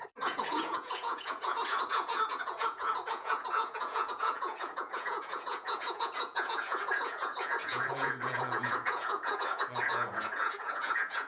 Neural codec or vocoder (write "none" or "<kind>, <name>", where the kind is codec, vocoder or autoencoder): vocoder, Vocos